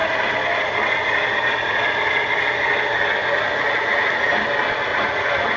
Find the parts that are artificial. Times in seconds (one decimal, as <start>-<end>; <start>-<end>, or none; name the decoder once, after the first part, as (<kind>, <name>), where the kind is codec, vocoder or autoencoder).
3.2-4.3 (vocoder, Vocos); 4.9-5.6